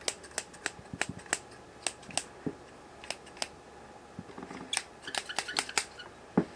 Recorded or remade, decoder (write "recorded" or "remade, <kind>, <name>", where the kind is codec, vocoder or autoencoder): recorded